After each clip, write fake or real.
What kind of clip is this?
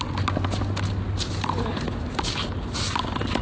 real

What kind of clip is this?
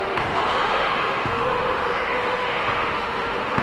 fake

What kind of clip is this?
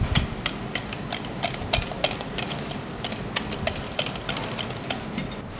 real